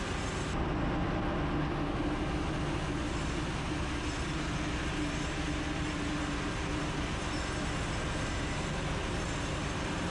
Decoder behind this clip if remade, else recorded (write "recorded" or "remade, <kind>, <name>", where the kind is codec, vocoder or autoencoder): recorded